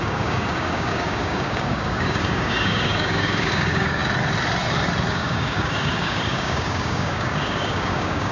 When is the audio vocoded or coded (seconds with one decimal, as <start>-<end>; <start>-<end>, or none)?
0.0-4.0; 5.1-8.3